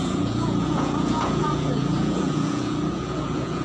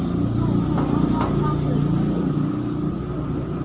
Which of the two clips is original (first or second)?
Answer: second